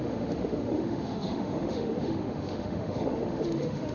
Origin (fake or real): fake